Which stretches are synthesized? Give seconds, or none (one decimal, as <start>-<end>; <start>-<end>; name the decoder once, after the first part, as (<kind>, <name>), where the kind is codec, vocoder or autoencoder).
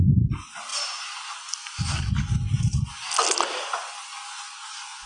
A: none